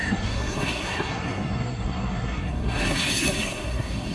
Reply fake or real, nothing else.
fake